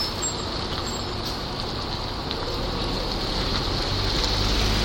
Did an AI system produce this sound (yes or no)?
no